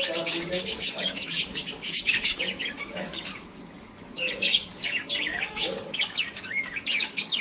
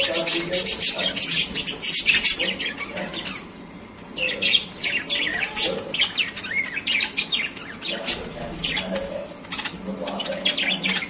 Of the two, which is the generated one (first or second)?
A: first